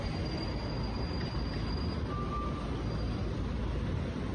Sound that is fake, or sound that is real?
real